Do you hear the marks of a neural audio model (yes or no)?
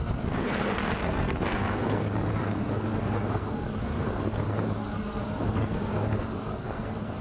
yes